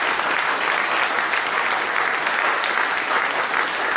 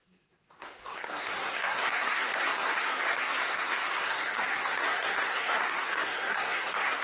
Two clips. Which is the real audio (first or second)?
first